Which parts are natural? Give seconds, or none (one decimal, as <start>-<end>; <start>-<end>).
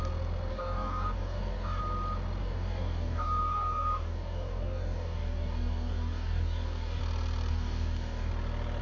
0.0-0.5; 1.8-2.4; 7.0-7.5; 8.3-8.8